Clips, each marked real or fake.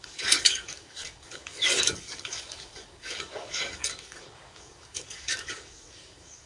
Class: fake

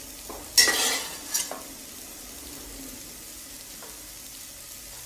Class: real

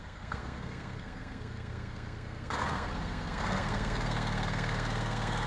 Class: fake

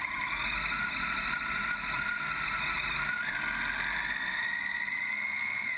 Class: real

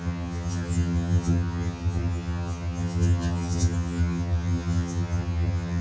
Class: fake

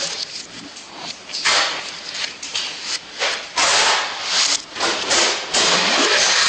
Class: fake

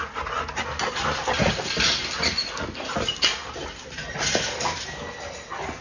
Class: real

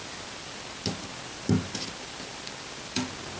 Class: real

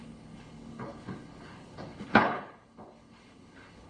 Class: fake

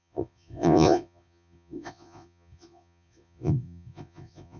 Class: fake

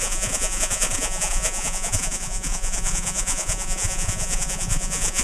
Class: fake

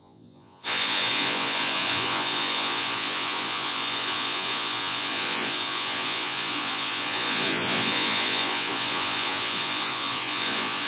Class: fake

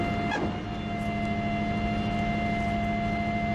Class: real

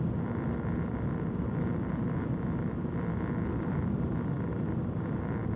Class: real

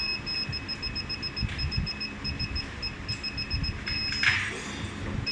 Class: real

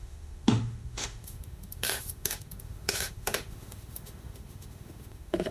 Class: fake